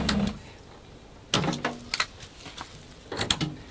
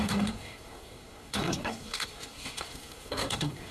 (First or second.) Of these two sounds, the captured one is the first